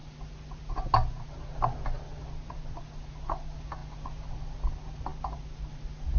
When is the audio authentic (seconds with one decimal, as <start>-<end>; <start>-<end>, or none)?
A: 0.0-6.2

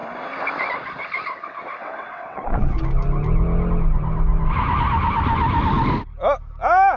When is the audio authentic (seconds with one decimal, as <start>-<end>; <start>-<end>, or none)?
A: 0.0-1.8; 2.8-7.0

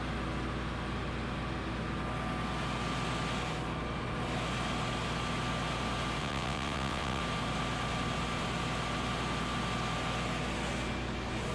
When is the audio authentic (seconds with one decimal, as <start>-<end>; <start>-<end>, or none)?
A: 0.0-6.2; 7.2-11.5

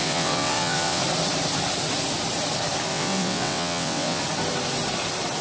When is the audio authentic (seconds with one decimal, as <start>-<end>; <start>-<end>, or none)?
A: 1.0-2.9; 4.2-5.4

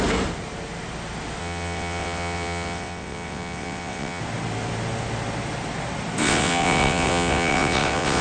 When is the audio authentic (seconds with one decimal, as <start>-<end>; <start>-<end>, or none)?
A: 0.0-1.4; 4.2-6.2

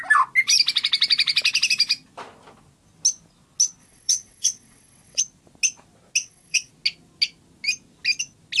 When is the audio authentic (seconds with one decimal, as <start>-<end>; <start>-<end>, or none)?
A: 0.0-3.8; 5.2-6.2; 6.7-8.6

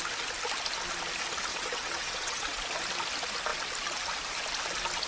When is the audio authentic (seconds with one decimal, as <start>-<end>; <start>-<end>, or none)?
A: 0.0-1.5; 2.6-5.1

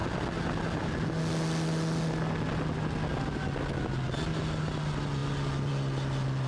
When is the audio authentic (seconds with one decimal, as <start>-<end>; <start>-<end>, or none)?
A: 0.0-6.5